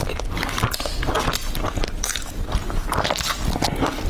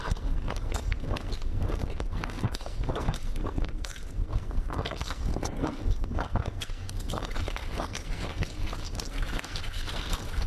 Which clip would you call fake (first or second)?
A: second